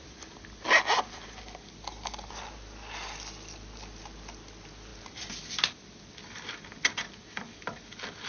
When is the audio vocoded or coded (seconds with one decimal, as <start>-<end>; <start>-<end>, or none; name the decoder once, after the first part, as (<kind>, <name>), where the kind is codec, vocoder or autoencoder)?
none